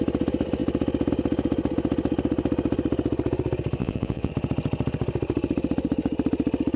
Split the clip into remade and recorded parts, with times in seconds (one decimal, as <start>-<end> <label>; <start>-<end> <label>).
0.0-3.8 recorded; 3.8-4.3 remade; 4.3-6.8 recorded